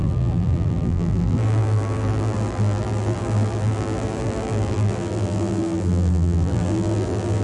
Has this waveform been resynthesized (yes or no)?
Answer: yes